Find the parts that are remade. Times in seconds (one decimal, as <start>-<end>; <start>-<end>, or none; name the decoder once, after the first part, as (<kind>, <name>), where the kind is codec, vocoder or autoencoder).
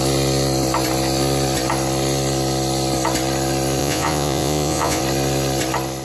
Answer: 3.8-5.0 (vocoder, Vocos)